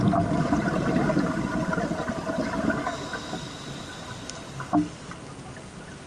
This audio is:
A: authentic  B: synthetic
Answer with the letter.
A